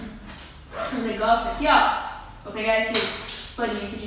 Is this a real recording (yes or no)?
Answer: yes